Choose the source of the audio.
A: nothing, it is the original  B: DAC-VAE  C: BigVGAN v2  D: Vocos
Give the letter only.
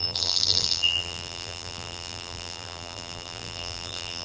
C